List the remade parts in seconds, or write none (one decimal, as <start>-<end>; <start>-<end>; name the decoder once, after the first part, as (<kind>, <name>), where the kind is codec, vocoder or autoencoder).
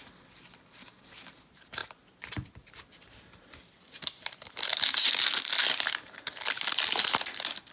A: none